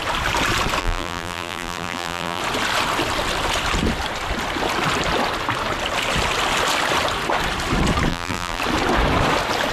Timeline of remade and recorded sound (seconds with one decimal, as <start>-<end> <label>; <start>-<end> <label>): 0.0-0.8 recorded; 0.8-2.4 remade; 2.4-8.1 recorded; 8.1-8.6 remade; 8.6-9.7 recorded